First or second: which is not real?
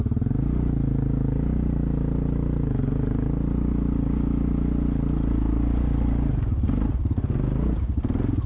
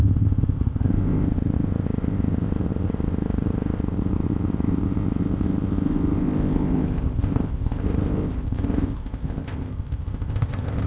second